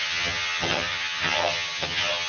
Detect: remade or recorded remade